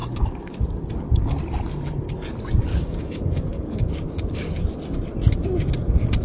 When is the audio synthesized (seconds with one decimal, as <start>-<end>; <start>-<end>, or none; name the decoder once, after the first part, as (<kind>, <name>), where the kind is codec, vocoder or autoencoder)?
0.0-0.6 (codec, DAC); 2.7-4.5